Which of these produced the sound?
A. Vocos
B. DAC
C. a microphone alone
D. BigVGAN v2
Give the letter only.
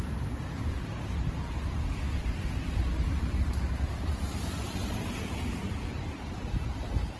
D